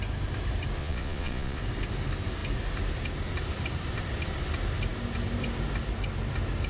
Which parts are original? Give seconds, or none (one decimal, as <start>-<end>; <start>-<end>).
0.0-0.8; 1.6-6.7